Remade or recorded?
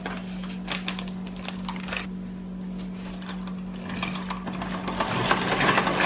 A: recorded